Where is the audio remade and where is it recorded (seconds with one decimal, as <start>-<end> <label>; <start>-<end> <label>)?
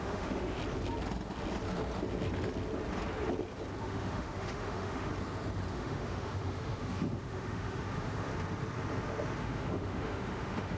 0.0-0.6 remade; 0.6-3.8 recorded; 3.8-5.1 remade; 5.1-5.7 recorded; 5.7-8.3 remade; 8.3-9.4 recorded; 9.4-10.8 remade